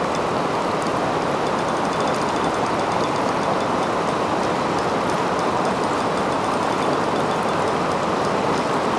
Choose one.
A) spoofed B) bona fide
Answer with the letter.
B